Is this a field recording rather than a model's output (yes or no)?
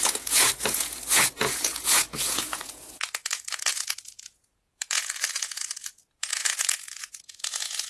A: no